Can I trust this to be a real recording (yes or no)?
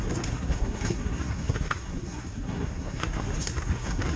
no